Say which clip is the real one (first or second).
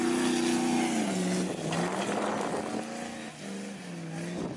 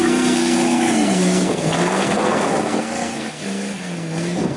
first